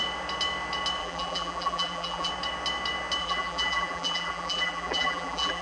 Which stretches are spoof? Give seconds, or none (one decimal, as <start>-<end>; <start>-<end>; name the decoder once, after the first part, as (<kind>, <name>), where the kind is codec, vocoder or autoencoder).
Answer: 1.0-2.3 (vocoder, BigVGAN v2); 3.2-5.6